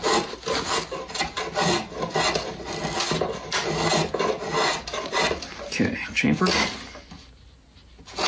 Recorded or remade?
recorded